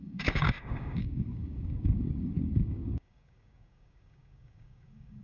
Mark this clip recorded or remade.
remade